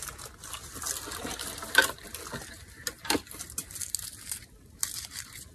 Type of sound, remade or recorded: recorded